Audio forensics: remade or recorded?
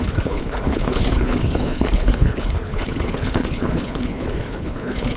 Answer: remade